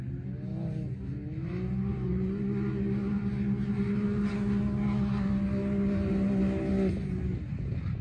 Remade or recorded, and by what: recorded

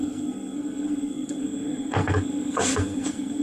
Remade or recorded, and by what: remade, codec, SNAC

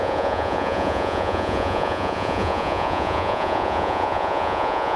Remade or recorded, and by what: remade, vocoder, Vocos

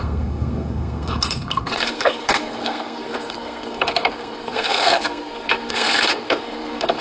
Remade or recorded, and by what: remade, codec, SNAC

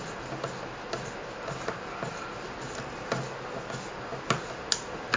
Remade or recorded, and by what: recorded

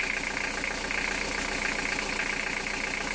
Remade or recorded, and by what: recorded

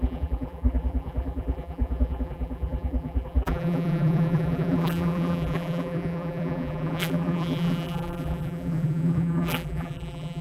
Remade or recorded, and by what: remade, vocoder, BigVGAN v2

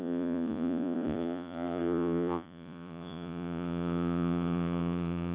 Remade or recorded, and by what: remade, vocoder, Vocos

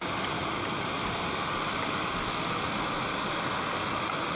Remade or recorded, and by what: recorded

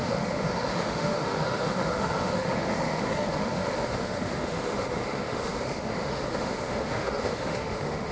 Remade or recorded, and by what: remade, autoencoder, DAC-VAE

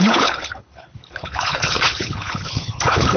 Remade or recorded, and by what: remade, codec, HILCodec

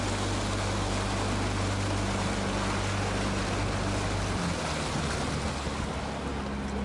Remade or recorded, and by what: recorded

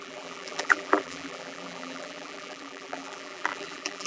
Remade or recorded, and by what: remade, vocoder, BigVGAN v2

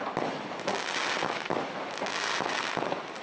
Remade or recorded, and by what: recorded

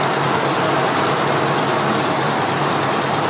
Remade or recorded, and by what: recorded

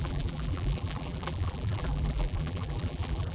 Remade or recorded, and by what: remade, vocoder, BigVGAN v2